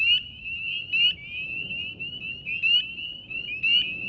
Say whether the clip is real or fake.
real